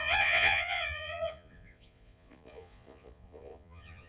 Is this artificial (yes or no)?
yes